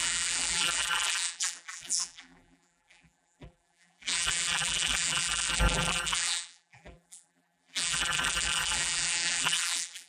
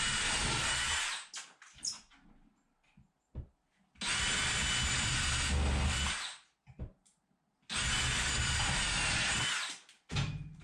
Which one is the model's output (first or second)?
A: first